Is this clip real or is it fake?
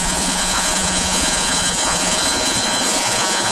fake